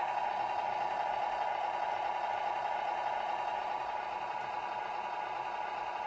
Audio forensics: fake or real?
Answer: real